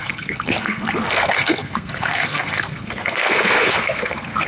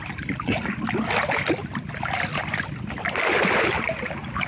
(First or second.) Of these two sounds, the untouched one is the second